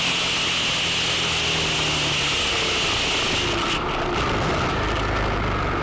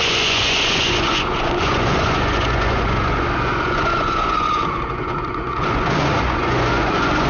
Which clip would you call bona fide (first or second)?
first